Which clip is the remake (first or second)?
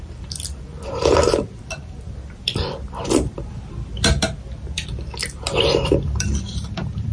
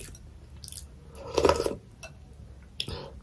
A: first